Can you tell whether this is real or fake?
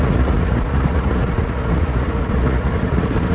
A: fake